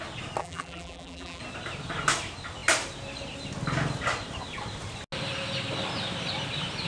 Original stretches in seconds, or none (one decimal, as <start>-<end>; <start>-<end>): 0.0-0.4; 1.4-6.9